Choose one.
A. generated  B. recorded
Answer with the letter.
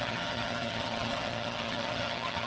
A